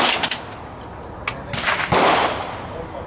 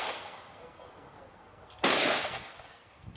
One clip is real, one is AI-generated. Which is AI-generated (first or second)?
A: second